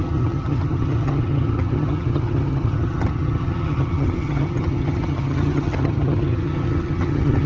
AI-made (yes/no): yes